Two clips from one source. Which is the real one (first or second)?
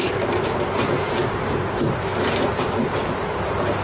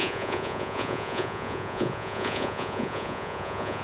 first